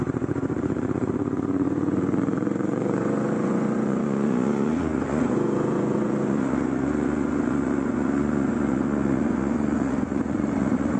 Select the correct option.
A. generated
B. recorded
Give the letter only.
A